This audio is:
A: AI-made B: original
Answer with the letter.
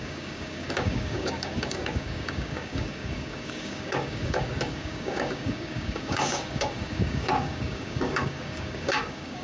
A